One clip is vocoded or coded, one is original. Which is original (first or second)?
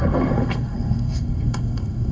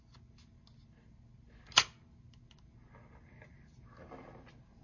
second